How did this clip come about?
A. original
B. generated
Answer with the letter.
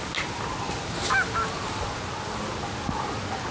A